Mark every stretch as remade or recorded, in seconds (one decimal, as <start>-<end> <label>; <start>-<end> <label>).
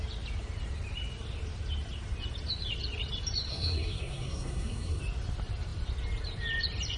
0.0-3.5 recorded; 3.5-5.0 remade; 5.0-7.0 recorded